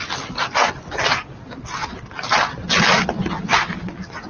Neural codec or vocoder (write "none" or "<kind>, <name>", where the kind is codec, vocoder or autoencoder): none